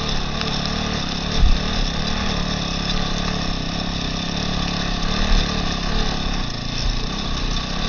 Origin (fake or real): real